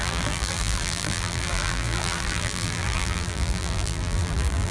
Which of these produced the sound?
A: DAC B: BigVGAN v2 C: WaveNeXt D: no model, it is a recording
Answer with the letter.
B